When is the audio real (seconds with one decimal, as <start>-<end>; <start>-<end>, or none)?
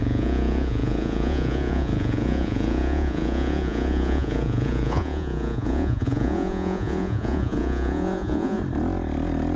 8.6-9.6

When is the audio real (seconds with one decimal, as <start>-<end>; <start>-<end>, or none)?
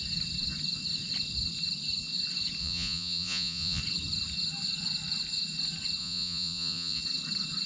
0.0-2.6; 3.8-6.0; 7.0-7.7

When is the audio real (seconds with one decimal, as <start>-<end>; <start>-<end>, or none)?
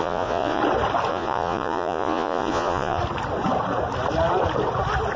0.6-1.1; 3.0-5.2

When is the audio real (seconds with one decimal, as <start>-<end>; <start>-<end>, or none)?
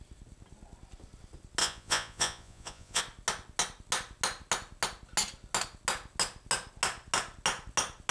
0.0-1.6; 3.0-8.1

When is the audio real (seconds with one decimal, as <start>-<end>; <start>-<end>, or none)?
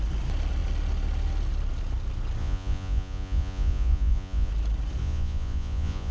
0.0-2.4; 4.5-5.0